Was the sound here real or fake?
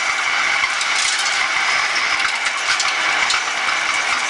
real